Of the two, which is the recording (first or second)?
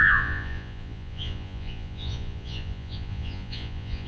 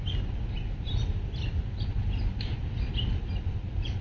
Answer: second